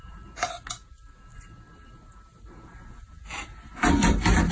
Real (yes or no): yes